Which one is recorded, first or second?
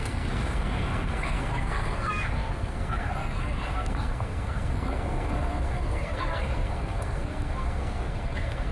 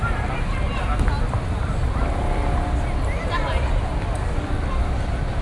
second